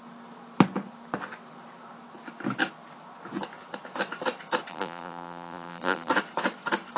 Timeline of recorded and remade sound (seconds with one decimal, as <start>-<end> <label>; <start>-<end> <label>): 0.0-4.7 recorded; 4.7-6.1 remade; 6.1-7.0 recorded